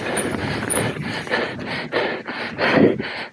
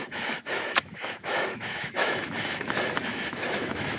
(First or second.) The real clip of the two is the first